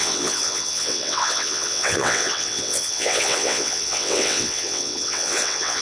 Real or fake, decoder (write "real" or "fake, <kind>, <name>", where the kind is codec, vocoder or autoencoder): fake, vocoder, WaveNeXt